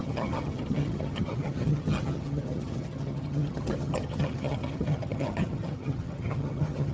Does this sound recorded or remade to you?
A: remade